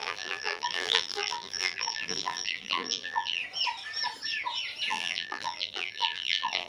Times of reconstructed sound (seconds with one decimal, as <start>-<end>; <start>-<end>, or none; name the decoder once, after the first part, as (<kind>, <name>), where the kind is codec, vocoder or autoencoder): 0.0-3.4 (vocoder, BigVGAN v2); 4.9-6.7